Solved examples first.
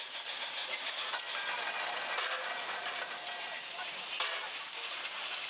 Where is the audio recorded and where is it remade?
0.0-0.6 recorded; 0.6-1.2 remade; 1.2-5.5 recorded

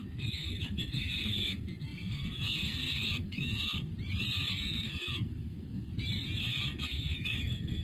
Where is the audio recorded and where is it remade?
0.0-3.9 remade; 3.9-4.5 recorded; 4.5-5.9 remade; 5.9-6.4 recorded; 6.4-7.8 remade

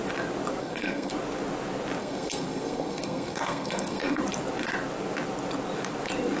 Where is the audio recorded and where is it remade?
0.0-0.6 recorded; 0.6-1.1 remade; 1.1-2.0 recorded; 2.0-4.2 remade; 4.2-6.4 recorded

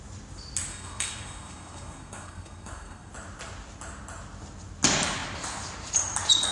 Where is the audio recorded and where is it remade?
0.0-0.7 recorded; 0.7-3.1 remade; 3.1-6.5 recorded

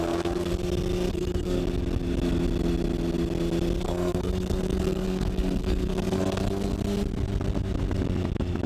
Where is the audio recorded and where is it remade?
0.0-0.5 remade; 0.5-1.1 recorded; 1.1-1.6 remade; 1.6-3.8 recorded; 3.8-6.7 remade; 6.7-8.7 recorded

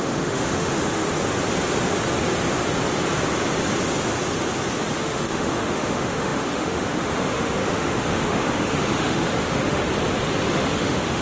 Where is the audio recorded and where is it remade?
0.0-1.0 remade; 1.0-5.0 recorded; 5.0-9.8 remade; 9.8-10.5 recorded; 10.5-11.2 remade

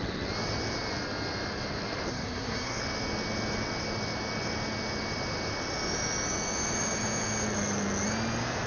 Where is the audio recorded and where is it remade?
0.0-2.1 recorded; 2.1-2.8 remade; 2.8-8.7 recorded